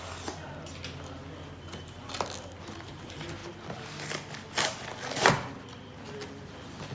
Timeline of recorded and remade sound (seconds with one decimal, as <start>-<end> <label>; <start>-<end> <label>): 0.0-6.9 recorded